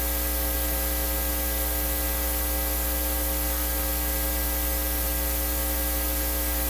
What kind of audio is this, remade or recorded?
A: recorded